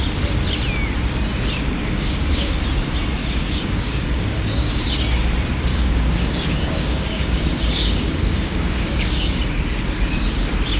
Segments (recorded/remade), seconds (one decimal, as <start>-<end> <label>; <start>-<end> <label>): 0.0-1.8 recorded; 1.8-2.5 remade; 2.5-3.2 recorded; 3.2-4.8 remade; 4.8-5.7 recorded; 5.7-9.4 remade; 9.4-10.8 recorded

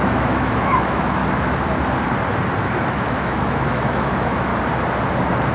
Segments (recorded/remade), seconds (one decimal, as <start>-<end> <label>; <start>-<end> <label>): 0.0-1.2 remade; 1.2-2.6 recorded; 2.6-4.5 remade; 4.5-5.5 recorded

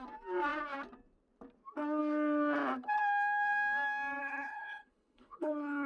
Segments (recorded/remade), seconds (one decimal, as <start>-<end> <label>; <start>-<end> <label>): 0.0-4.2 recorded; 4.2-5.9 remade

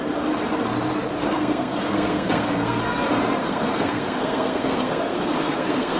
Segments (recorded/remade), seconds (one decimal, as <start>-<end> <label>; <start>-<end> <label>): 0.0-1.2 recorded; 1.2-2.8 remade; 2.8-3.4 recorded; 3.4-6.0 remade

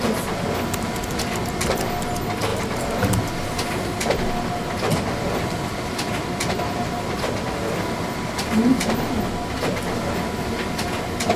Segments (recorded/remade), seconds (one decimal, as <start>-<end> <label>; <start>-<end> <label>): 0.0-2.5 recorded; 2.5-3.1 remade; 3.1-11.4 recorded

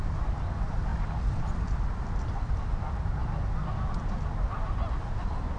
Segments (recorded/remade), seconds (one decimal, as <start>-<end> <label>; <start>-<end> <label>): 0.0-5.6 recorded

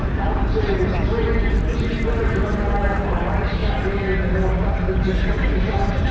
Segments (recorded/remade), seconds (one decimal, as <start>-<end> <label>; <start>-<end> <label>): 0.0-3.6 remade; 3.6-6.1 recorded